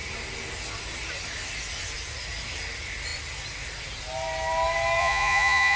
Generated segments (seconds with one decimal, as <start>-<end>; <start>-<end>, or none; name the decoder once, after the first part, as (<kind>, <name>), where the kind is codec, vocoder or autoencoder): 5.0-5.8 (vocoder, Vocos)